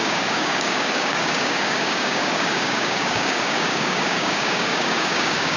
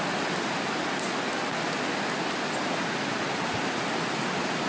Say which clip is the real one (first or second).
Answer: second